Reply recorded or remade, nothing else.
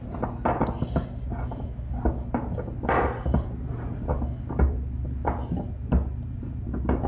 recorded